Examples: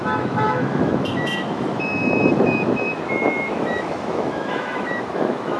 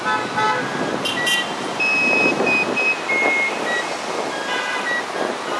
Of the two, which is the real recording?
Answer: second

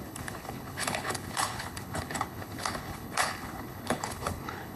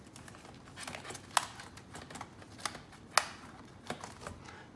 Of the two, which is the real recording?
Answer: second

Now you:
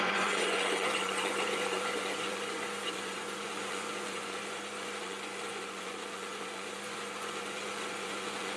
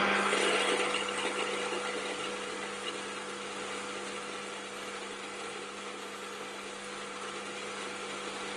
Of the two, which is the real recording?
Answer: second